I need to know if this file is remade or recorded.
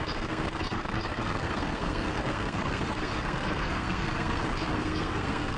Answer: remade